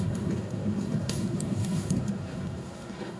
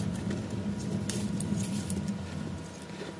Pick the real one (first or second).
second